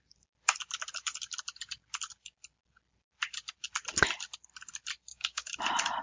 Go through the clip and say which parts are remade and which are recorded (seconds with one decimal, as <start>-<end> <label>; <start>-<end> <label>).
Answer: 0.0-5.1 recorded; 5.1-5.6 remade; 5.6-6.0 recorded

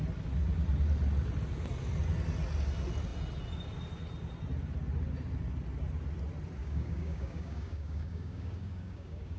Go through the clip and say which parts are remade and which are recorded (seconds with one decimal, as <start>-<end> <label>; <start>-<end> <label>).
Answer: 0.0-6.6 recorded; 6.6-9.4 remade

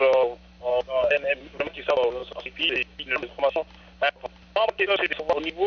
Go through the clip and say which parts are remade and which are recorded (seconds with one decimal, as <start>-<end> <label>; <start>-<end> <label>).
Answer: 0.0-0.7 recorded; 0.7-1.6 remade; 1.6-5.7 recorded